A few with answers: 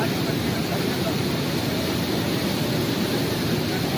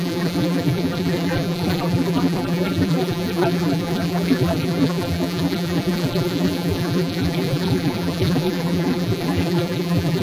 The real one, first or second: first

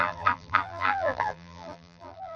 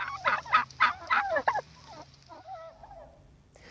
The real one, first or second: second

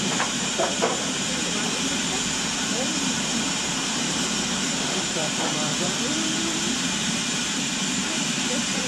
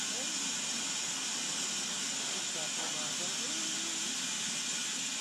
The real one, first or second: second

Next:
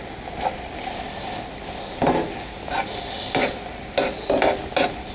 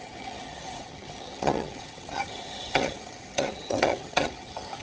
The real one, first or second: first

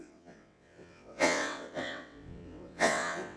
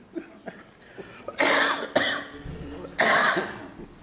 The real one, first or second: second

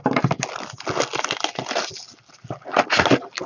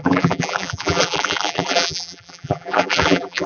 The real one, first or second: first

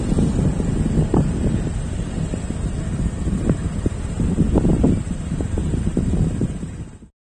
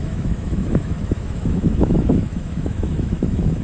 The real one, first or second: first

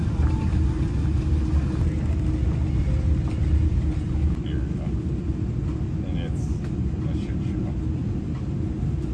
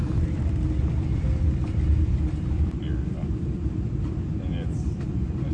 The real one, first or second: first